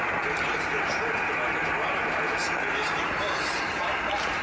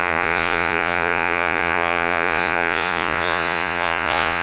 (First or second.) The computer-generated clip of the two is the second